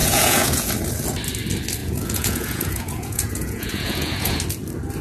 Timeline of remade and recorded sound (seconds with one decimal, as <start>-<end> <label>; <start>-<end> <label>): 0.0-0.7 remade; 0.7-1.8 recorded; 1.8-4.4 remade; 4.4-5.0 recorded